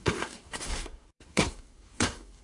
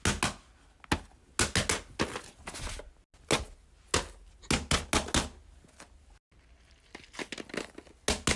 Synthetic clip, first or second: first